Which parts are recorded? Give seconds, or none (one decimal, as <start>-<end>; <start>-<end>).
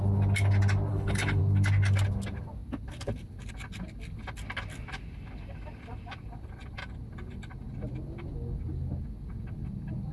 0.0-0.9; 1.4-10.1